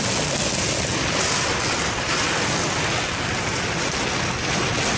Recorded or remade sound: recorded